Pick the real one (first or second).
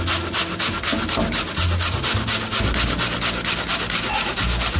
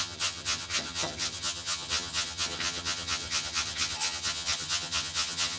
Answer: first